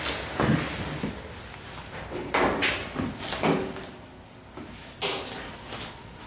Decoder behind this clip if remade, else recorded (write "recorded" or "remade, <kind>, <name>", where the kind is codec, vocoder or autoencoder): recorded